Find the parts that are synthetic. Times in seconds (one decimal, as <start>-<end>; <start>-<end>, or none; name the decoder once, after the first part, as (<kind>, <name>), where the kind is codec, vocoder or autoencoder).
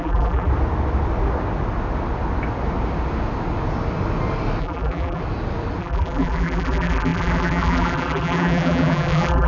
0.0-0.5 (vocoder, BigVGAN v2); 4.6-5.2; 5.8-9.5